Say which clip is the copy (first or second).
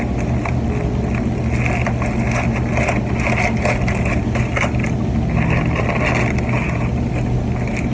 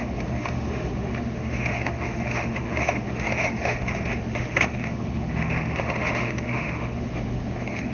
second